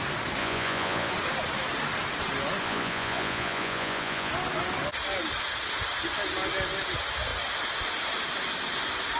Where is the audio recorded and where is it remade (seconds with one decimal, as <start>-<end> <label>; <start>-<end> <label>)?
0.0-0.4 recorded; 0.4-1.1 remade; 1.1-2.6 recorded; 2.6-4.3 remade; 4.3-9.2 recorded